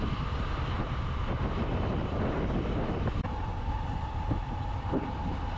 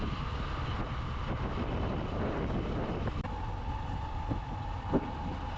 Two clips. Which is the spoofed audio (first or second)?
first